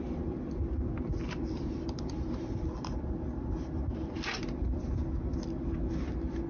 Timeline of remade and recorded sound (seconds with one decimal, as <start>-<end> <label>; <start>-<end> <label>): 0.0-1.1 recorded; 1.1-2.7 remade; 2.7-6.5 recorded